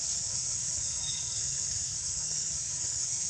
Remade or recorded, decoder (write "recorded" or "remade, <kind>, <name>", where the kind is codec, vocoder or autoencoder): remade, codec, SNAC